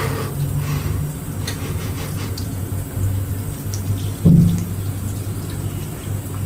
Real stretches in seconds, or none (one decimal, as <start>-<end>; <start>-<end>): 0.0-1.4; 2.7-6.5